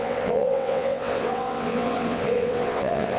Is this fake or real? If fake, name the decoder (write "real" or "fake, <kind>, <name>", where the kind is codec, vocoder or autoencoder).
fake, vocoder, WaveNeXt